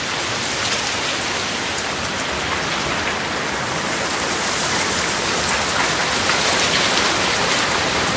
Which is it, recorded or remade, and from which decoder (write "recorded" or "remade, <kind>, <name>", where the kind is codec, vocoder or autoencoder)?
recorded